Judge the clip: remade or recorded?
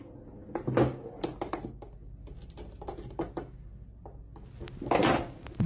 recorded